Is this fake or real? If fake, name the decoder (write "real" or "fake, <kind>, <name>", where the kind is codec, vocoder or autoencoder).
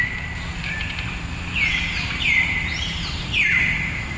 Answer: fake, vocoder, BigVGAN v2